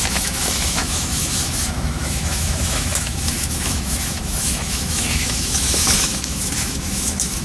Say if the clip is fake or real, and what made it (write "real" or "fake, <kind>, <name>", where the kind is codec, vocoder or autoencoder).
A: fake, autoencoder, DAC-VAE